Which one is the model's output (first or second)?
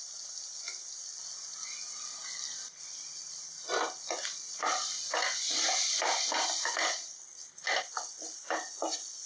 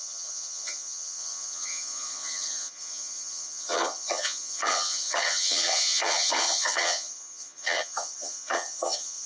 second